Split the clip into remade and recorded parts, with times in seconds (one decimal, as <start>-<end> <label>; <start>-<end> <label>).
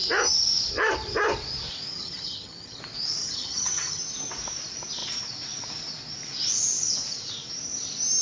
0.0-1.9 recorded; 1.9-2.8 remade; 2.8-3.2 recorded; 3.2-4.0 remade; 4.0-8.2 recorded